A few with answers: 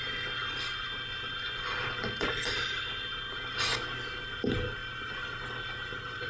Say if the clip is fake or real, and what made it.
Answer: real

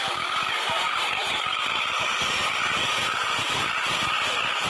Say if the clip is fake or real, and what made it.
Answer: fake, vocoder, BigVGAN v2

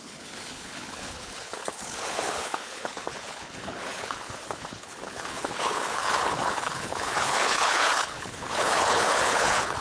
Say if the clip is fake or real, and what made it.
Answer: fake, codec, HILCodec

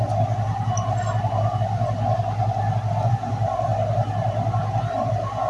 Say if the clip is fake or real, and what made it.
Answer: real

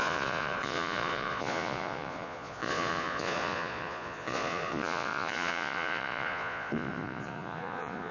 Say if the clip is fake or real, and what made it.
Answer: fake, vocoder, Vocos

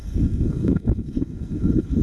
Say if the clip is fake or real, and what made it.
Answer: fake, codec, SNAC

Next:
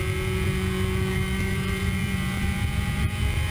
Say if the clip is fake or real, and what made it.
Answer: fake, vocoder, Vocos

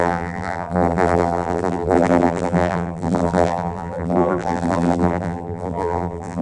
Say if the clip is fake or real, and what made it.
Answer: fake, vocoder, BigVGAN v2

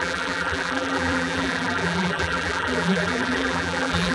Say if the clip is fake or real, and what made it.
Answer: fake, vocoder, BigVGAN v2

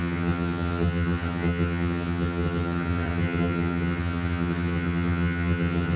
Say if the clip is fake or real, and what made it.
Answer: fake, vocoder, HiFi-GAN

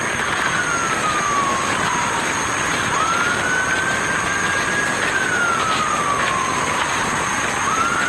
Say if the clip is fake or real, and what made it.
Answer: real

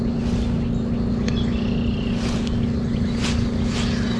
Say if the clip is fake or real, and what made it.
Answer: real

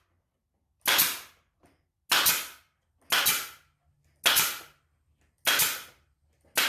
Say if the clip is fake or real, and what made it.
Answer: real